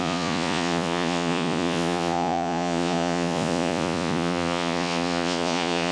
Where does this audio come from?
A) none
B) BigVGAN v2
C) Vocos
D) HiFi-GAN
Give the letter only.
C